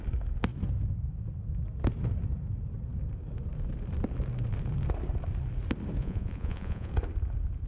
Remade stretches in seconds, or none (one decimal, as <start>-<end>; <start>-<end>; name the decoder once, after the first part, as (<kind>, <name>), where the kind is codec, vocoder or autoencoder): 6.0-6.9 (vocoder, Vocos)